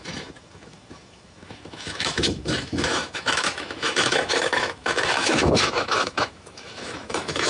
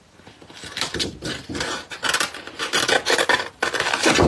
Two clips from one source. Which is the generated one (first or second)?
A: first